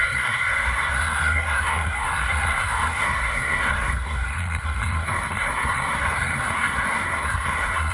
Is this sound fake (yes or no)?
yes